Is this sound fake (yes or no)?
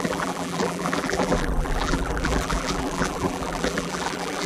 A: yes